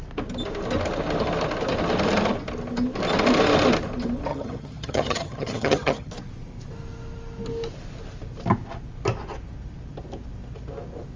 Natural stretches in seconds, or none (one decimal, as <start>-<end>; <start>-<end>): 0.0-4.3; 6.1-11.2